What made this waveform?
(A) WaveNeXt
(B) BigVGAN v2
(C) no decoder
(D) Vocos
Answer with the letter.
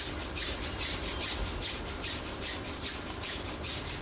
C